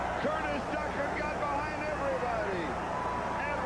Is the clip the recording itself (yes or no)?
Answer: yes